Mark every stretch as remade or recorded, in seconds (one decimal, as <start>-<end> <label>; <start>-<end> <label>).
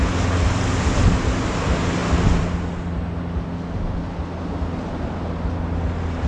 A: 0.0-6.3 recorded